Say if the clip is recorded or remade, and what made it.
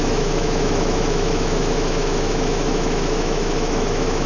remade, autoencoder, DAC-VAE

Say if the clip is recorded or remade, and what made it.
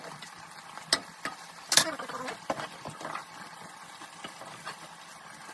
recorded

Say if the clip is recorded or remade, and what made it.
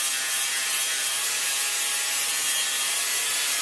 recorded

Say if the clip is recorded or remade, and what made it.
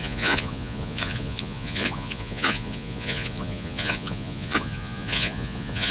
remade, vocoder, Vocos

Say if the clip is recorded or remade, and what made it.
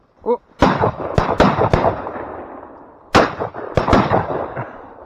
recorded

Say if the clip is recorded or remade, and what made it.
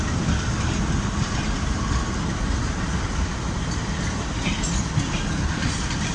recorded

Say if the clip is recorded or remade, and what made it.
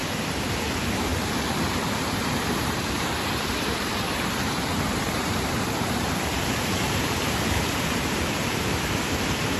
remade, vocoder, BigVGAN v2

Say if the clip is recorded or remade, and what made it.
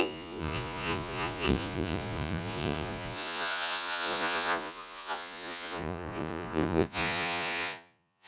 remade, vocoder, Vocos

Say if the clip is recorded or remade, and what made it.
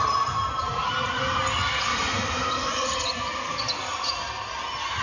recorded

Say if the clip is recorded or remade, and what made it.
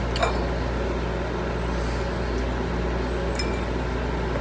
recorded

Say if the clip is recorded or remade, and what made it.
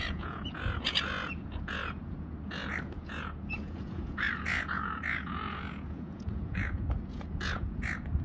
remade, vocoder, Vocos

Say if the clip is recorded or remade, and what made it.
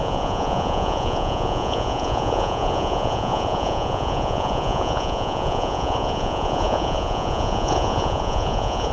remade, vocoder, Vocos